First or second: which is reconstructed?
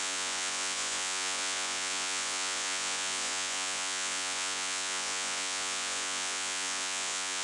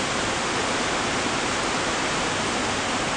first